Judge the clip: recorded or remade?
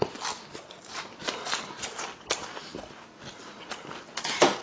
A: recorded